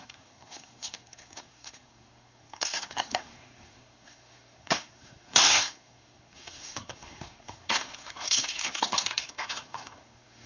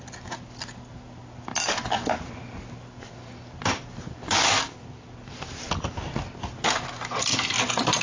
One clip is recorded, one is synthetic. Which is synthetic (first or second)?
first